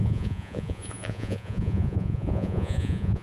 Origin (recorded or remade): remade